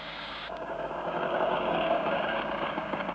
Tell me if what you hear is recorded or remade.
remade